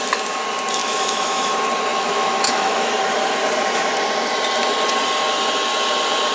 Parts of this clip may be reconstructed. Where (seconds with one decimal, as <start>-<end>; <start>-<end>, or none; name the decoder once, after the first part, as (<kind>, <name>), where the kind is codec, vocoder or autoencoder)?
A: 0.8-1.5 (autoencoder, DAC-VAE); 1.9-2.9